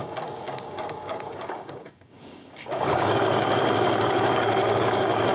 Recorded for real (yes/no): no